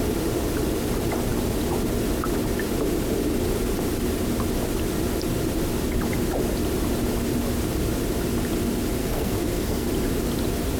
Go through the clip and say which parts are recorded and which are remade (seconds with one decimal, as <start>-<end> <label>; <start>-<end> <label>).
0.0-9.0 recorded; 9.0-9.9 remade; 9.9-10.8 recorded